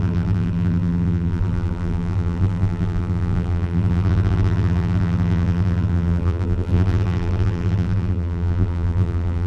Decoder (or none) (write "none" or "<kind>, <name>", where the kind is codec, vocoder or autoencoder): vocoder, BigVGAN v2